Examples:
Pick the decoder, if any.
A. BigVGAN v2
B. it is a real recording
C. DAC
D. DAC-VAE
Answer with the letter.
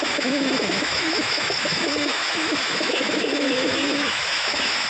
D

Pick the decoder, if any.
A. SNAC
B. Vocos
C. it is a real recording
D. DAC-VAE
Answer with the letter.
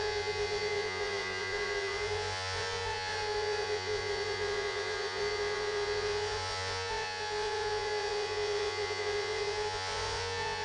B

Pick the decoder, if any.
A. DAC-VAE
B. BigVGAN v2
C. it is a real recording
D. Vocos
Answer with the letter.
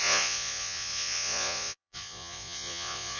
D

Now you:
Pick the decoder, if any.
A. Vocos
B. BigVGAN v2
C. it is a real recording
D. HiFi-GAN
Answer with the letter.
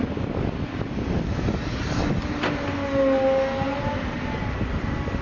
C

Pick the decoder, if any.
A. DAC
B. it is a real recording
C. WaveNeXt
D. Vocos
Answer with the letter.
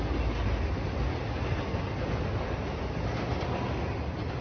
B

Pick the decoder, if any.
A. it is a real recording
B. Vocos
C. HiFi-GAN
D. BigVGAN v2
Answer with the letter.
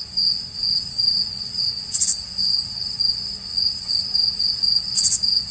A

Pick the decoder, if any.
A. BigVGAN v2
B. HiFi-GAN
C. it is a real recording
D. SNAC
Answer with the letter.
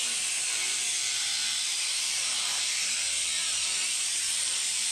A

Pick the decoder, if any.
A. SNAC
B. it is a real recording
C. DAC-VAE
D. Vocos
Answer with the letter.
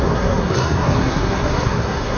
A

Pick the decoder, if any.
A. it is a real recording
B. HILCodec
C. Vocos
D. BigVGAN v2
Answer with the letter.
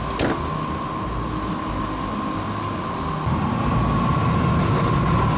A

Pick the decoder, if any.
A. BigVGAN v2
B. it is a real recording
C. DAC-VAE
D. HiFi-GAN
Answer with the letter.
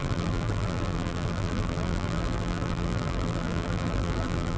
A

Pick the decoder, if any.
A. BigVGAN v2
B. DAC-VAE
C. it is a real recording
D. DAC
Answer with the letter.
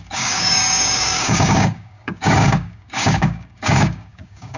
D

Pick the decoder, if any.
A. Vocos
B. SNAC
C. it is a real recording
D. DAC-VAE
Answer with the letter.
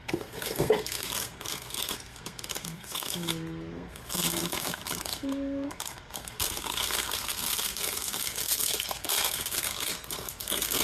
B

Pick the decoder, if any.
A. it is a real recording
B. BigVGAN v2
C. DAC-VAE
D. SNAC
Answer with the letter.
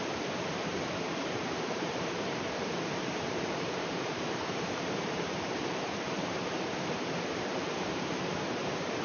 B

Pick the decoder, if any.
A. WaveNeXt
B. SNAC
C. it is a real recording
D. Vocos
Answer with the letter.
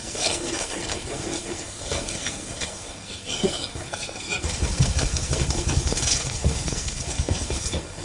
B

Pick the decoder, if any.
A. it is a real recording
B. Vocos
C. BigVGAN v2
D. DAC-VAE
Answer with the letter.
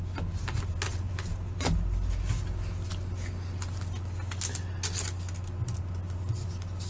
A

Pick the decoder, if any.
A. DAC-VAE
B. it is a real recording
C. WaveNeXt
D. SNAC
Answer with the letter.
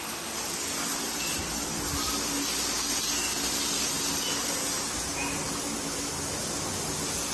B